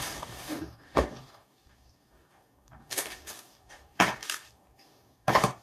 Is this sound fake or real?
fake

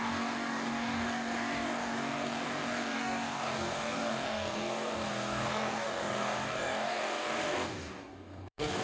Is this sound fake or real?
fake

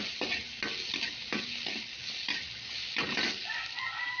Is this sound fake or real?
real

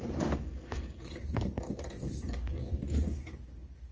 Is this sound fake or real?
fake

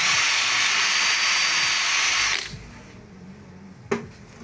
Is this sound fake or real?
real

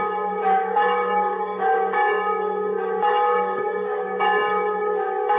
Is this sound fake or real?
fake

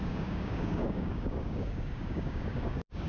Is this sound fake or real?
fake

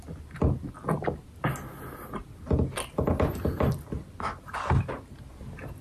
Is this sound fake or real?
real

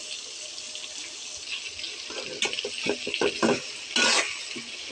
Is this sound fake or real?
real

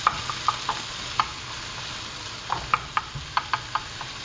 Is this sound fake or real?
real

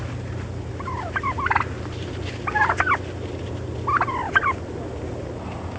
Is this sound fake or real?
real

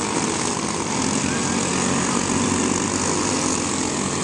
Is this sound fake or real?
real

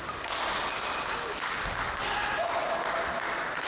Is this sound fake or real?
real